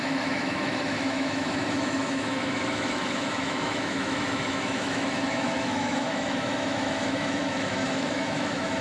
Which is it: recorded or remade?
remade